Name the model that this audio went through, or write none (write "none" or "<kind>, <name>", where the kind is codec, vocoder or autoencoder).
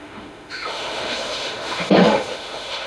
autoencoder, DAC-VAE